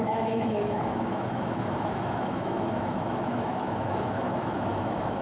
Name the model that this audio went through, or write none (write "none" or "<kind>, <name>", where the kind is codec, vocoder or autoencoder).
autoencoder, DAC-VAE